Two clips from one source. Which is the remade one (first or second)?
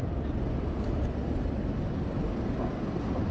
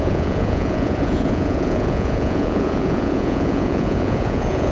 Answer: second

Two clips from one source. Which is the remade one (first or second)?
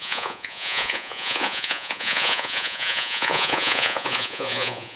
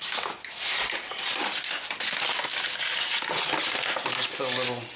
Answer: first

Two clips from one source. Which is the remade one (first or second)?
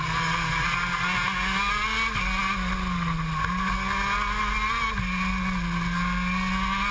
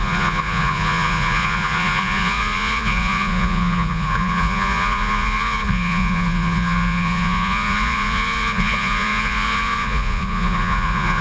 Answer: second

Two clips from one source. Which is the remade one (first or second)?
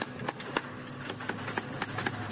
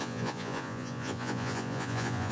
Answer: second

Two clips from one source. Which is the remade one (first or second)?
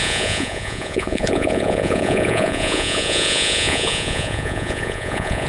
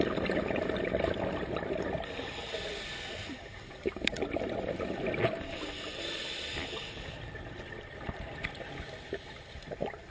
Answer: first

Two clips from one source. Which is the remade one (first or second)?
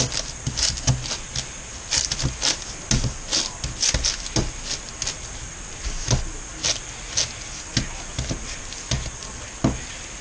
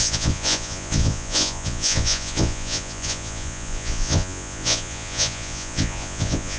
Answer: second